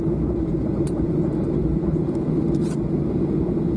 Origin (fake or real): real